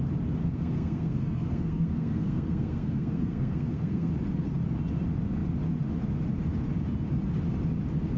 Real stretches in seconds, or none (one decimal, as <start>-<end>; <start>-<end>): 0.0-0.4; 4.1-8.2